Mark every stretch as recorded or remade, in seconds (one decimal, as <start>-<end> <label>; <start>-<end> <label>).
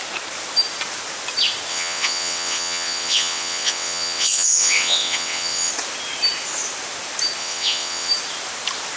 0.0-1.7 recorded; 1.7-5.7 remade; 5.7-7.4 recorded; 7.4-8.1 remade; 8.1-9.0 recorded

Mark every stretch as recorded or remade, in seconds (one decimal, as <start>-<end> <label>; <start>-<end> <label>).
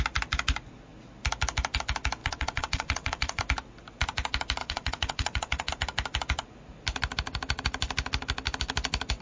0.0-2.2 recorded; 2.2-3.4 remade; 3.4-4.6 recorded; 4.6-5.7 remade; 5.7-9.2 recorded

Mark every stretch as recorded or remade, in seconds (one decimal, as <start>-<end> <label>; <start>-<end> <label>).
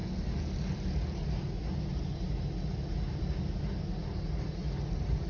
0.0-5.3 recorded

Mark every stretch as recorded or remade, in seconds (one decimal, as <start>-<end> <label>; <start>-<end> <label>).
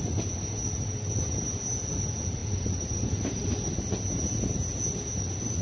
0.0-5.6 recorded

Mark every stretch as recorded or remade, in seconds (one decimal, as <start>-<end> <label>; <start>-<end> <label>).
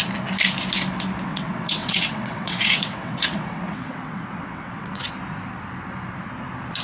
0.0-1.3 recorded; 1.3-5.1 remade; 5.1-6.8 recorded